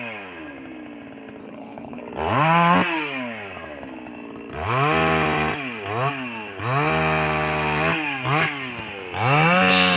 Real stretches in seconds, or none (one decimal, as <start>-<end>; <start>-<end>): 0.0-1.4; 2.0-10.0